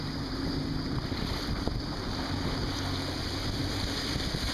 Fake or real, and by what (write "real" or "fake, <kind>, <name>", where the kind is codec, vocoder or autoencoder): real